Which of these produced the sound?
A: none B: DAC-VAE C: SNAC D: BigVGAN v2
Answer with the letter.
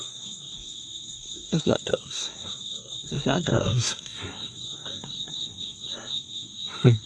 C